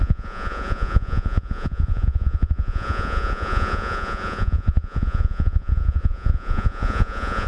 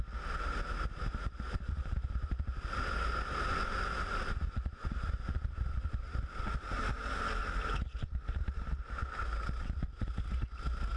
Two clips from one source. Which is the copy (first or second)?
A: first